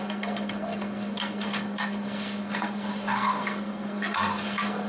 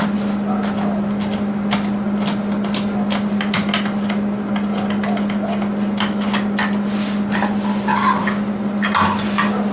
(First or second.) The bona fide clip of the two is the second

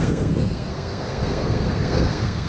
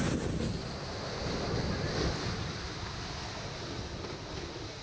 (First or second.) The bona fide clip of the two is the second